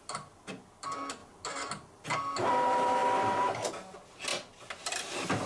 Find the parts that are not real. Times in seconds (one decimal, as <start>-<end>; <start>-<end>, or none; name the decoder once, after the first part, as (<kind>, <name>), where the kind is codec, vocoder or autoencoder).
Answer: none